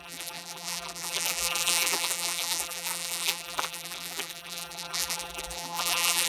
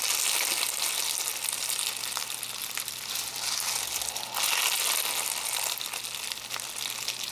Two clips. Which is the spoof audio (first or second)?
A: first